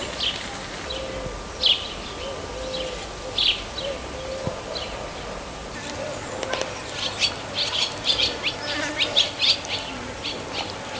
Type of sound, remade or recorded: recorded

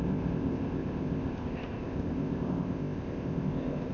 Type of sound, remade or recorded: remade